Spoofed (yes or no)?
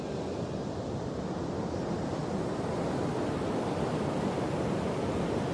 no